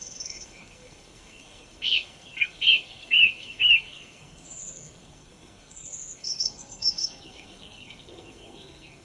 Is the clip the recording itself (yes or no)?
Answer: no